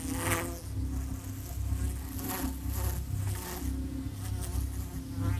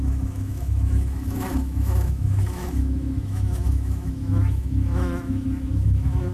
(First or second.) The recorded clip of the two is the first